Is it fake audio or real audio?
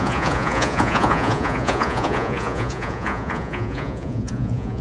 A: fake